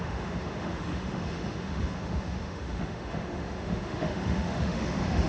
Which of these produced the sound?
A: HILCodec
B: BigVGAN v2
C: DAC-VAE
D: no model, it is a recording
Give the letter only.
C